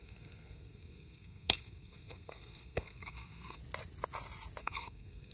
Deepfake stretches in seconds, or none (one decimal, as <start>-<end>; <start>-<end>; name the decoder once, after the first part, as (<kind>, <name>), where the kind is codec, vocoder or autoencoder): 0.0-3.6 (codec, SNAC); 4.6-5.3